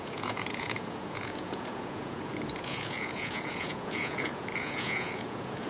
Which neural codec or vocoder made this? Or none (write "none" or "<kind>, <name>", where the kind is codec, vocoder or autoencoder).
vocoder, Vocos